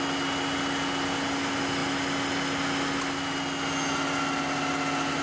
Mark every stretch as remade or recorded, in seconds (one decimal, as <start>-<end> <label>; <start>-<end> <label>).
0.0-5.2 recorded